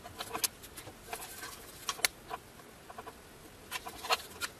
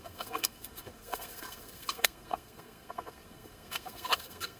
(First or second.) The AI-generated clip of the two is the second